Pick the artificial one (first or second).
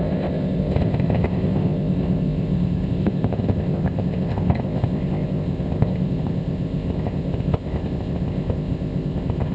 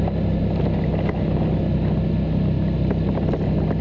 first